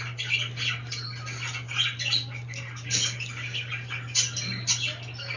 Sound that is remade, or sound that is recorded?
recorded